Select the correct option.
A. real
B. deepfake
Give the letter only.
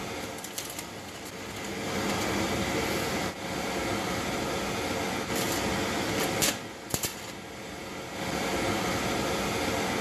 A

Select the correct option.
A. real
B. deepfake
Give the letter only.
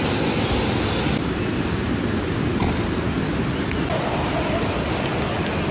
A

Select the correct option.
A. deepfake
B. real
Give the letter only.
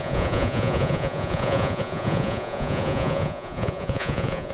A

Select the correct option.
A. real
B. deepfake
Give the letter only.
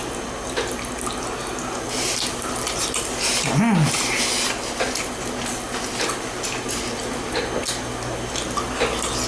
A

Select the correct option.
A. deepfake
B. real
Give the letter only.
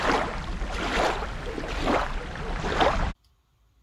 B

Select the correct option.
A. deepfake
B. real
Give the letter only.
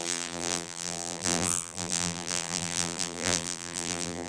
A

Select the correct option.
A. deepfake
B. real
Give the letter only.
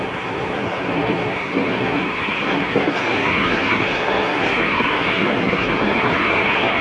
A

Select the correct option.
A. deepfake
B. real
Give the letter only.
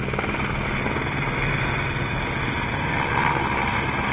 B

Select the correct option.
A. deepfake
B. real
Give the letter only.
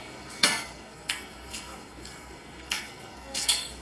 A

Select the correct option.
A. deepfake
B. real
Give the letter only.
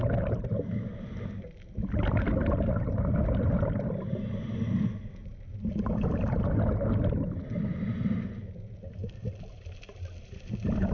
B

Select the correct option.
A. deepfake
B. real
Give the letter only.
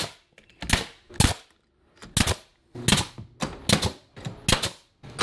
B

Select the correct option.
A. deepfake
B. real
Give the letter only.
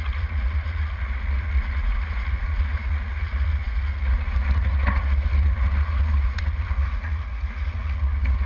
A